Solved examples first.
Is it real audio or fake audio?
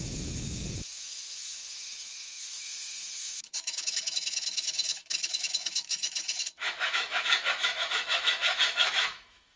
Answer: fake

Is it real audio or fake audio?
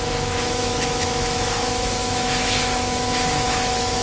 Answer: fake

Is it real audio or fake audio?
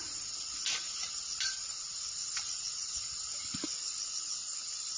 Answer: real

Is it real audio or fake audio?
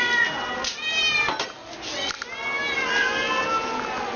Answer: real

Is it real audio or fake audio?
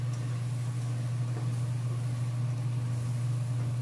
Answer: real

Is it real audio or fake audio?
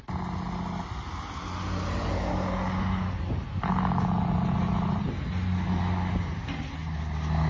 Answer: real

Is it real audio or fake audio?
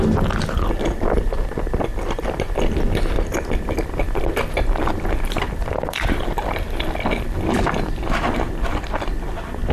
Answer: real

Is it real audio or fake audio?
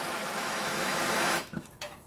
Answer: fake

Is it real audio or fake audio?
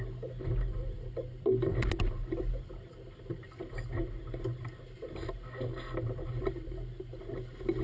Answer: real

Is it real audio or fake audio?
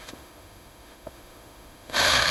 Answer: fake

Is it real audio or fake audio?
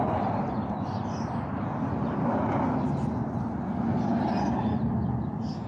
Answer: real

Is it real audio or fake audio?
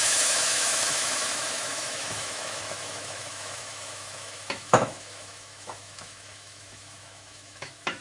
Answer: fake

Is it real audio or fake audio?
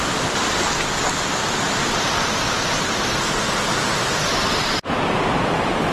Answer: real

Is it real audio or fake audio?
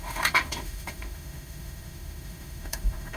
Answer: fake